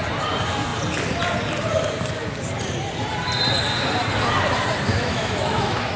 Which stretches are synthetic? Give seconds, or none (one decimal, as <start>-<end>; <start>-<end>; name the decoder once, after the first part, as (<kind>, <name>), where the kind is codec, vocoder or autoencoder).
4.9-6.0 (autoencoder, DAC-VAE)